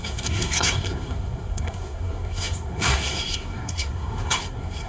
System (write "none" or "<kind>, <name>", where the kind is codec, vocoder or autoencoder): codec, SNAC